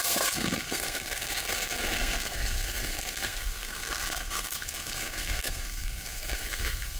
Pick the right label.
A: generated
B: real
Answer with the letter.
A